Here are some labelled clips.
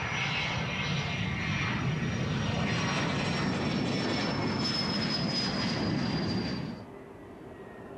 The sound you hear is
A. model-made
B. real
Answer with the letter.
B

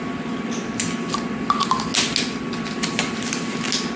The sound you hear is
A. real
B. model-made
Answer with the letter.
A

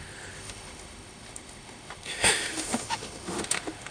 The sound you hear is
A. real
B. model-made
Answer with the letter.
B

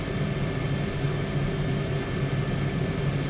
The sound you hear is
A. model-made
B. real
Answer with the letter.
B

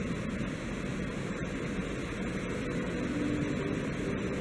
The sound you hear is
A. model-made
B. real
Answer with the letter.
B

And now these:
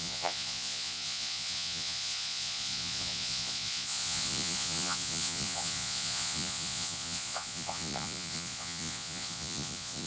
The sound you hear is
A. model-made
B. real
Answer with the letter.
A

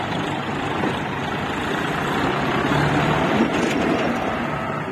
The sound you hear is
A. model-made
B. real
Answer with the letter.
B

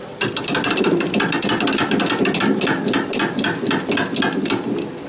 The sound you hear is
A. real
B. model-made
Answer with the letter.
A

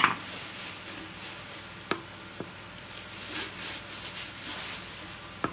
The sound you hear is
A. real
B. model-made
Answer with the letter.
A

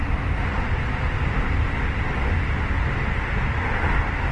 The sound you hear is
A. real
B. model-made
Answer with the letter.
A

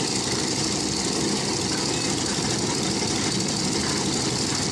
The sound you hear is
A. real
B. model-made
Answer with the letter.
A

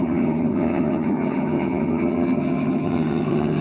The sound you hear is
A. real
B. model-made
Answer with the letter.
B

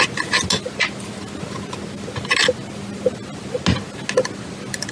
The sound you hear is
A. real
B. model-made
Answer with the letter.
A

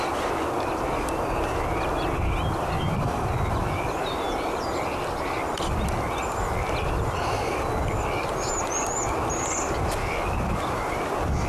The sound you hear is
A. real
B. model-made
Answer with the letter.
A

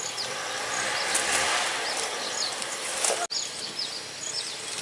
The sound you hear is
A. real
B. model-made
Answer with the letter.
A